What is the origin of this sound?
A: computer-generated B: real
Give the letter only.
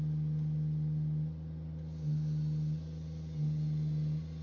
B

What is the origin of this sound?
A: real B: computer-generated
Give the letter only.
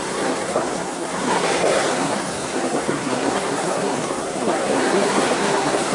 B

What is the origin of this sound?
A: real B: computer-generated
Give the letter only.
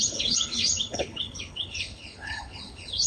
B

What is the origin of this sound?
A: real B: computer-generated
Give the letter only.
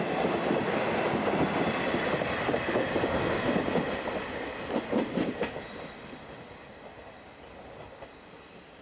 A